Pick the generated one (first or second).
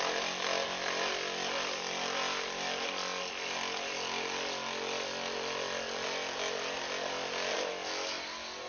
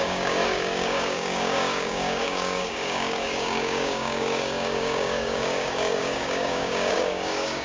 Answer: second